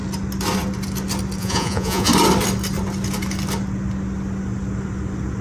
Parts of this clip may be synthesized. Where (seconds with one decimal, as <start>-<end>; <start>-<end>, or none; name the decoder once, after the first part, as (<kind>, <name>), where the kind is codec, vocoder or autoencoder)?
1.4-2.1 (vocoder, Vocos)